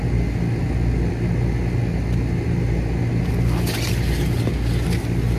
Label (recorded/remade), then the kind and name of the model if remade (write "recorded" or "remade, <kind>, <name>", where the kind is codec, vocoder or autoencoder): recorded